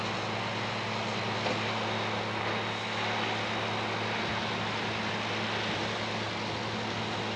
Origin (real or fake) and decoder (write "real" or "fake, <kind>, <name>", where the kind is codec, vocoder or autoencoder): real